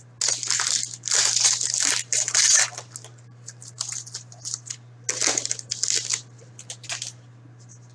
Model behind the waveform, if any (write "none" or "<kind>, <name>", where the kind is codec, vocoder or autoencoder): none